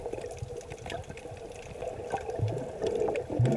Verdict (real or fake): real